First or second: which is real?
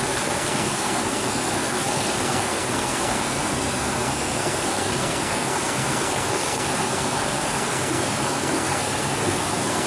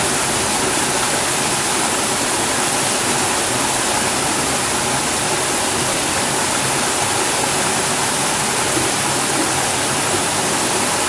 second